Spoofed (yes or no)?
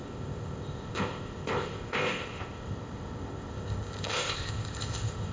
yes